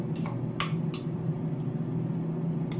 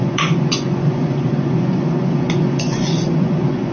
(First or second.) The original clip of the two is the first